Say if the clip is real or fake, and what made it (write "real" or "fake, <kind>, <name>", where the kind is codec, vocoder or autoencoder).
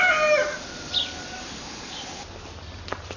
real